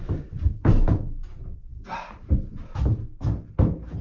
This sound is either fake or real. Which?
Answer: real